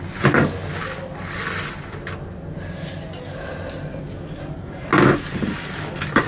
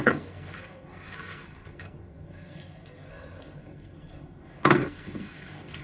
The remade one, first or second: second